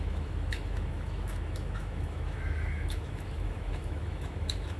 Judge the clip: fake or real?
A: fake